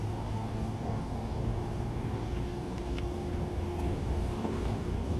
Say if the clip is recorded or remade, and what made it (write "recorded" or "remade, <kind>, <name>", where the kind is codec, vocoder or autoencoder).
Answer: remade, codec, DAC